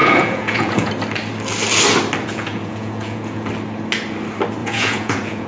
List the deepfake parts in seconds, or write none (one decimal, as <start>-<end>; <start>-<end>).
0.0-0.9; 2.2-3.5; 4.6-5.5